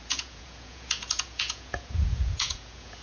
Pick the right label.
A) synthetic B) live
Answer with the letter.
A